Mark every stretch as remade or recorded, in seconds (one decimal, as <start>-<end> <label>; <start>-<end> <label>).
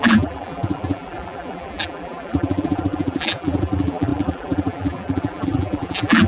0.0-6.3 remade